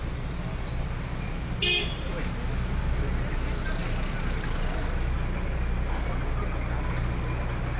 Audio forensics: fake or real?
real